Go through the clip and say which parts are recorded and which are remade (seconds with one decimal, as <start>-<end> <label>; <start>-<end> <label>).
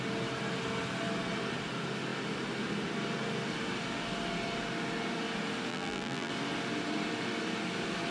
0.0-5.7 recorded; 5.7-6.3 remade; 6.3-8.1 recorded